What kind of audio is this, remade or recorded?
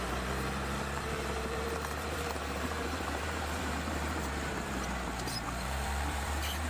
remade